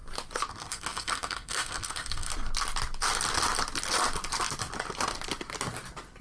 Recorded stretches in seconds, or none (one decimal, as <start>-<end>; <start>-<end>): 0.0-0.5; 2.3-6.2